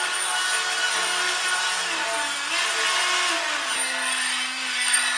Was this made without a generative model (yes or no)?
yes